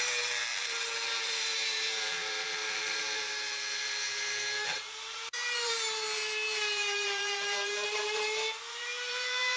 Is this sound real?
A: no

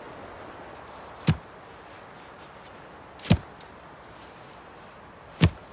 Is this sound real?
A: yes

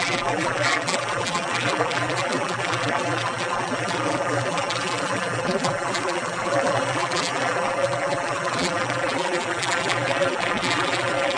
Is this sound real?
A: no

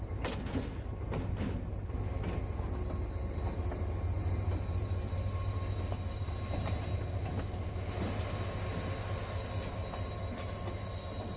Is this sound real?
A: yes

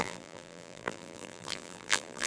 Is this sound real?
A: no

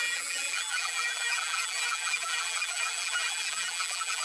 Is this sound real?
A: no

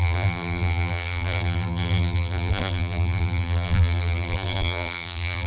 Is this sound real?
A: no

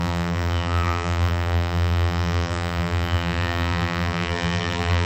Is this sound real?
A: no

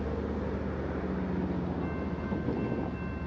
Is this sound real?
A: yes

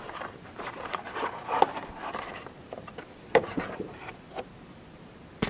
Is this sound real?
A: no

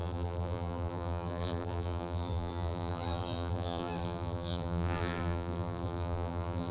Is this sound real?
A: no